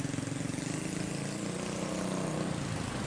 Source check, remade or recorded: recorded